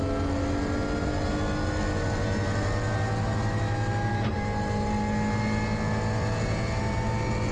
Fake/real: real